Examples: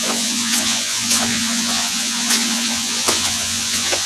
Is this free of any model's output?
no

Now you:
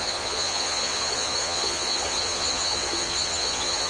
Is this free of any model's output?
no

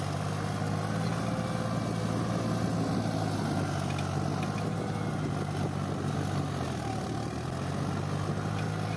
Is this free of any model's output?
yes